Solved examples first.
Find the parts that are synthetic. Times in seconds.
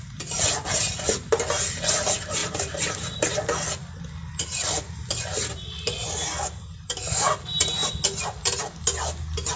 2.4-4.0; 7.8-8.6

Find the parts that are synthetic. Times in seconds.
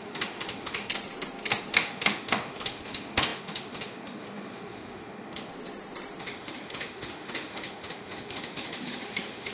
0.0-0.9; 1.7-5.5; 6.2-9.5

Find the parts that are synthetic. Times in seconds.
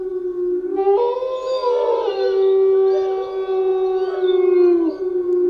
none